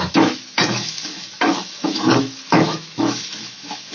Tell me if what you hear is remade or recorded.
remade